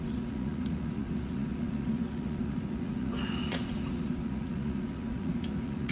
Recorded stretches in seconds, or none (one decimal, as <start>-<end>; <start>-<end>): none